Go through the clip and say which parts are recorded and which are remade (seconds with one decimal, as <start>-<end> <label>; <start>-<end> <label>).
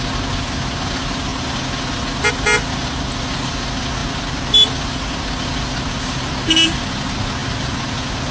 0.0-8.3 recorded